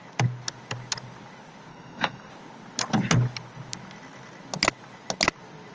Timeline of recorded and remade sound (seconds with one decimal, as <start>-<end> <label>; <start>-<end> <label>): 0.0-1.7 recorded; 1.7-2.3 remade; 2.3-5.7 recorded